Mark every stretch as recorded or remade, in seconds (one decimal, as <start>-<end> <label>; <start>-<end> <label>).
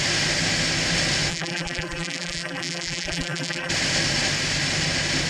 0.0-1.3 recorded; 1.3-3.7 remade; 3.7-5.3 recorded